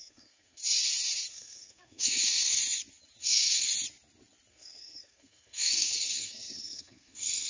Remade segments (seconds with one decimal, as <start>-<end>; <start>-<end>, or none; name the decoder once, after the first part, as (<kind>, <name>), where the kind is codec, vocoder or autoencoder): 0.0-0.6 (codec, SNAC); 1.3-2.6; 3.2-3.7; 4.5-7.5